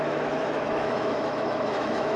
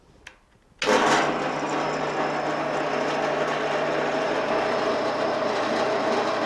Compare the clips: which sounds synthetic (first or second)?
first